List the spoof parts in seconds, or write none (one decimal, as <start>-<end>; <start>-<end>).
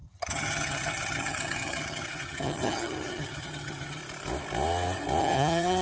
0.0-4.0; 5.2-5.8